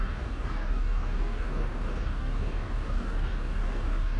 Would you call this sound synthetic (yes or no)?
yes